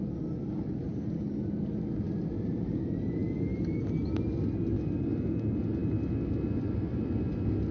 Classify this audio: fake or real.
real